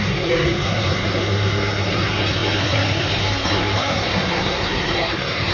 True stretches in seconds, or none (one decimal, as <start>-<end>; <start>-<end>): none